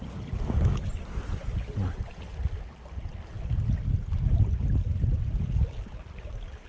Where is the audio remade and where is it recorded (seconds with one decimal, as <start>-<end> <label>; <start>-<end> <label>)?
0.0-6.7 recorded